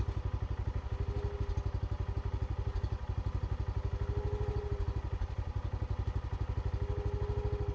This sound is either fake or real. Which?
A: real